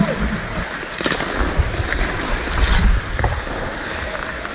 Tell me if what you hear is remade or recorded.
recorded